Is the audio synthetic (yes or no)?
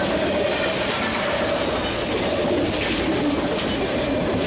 no